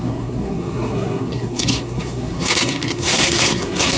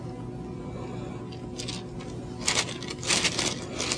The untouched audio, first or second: second